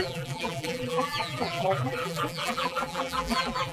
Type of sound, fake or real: fake